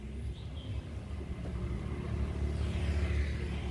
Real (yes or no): yes